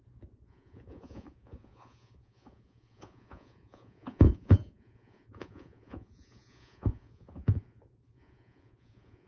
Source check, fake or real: fake